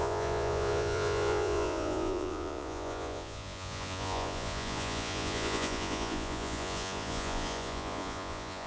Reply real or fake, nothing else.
fake